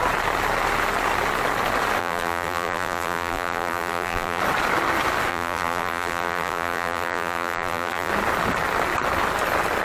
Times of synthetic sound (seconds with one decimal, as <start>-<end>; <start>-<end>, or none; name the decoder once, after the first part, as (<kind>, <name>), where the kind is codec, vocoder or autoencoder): 2.0-4.4 (vocoder, BigVGAN v2); 5.3-8.1